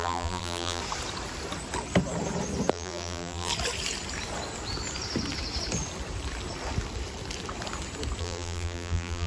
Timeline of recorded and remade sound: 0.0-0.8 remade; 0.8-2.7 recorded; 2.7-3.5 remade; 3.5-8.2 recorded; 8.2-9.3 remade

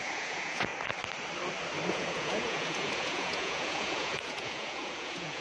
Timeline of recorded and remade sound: 0.0-0.7 remade; 0.7-1.9 recorded; 1.9-5.4 remade